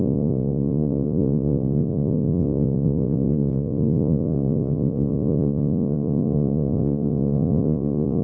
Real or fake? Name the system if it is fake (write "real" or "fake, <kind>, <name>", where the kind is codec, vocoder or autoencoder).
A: fake, vocoder, Vocos